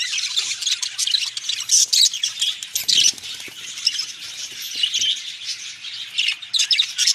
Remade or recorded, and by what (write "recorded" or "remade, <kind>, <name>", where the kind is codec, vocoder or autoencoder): recorded